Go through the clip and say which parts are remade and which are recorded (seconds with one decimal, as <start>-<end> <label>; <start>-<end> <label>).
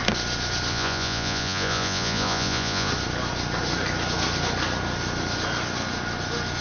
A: 0.0-0.7 recorded; 0.7-2.9 remade; 2.9-6.6 recorded